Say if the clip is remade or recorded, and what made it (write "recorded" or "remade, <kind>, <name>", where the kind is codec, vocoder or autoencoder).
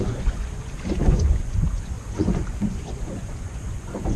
remade, vocoder, Vocos